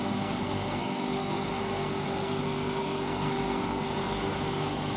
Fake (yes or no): yes